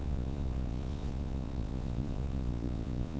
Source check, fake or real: fake